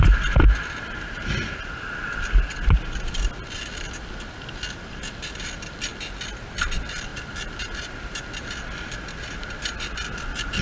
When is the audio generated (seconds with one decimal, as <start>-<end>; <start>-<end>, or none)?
none